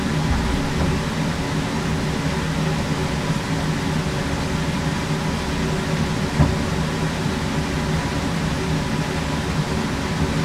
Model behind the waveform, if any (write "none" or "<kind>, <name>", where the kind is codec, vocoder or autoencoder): none